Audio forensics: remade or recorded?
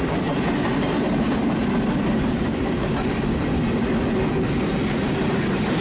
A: recorded